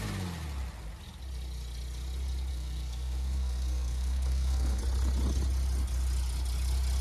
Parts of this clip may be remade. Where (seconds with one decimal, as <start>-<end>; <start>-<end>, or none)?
2.5-4.8

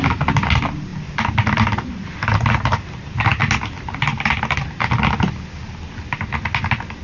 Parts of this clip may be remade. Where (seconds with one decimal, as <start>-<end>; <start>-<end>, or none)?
none

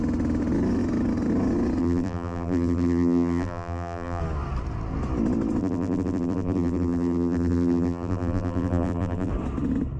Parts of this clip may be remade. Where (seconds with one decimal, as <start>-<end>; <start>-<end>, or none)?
1.8-4.2; 5.6-9.3